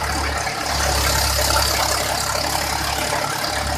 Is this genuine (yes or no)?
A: yes